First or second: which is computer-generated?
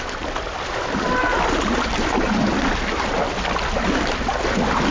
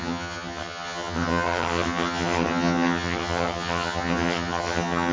second